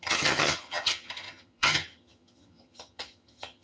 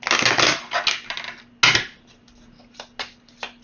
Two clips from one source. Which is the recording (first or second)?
second